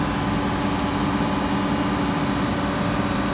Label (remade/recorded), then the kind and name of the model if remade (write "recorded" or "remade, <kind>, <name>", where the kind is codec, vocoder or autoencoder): recorded